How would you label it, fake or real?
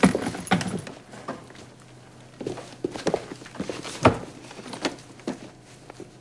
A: real